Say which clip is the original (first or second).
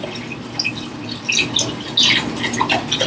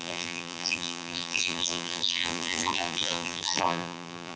first